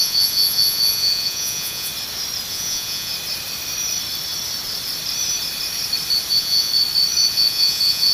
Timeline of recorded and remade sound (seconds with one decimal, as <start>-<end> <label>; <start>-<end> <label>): 0.0-1.9 remade; 1.9-2.5 recorded; 2.5-3.1 remade; 3.1-6.3 recorded; 6.3-6.7 remade; 6.7-7.3 recorded; 7.3-8.1 remade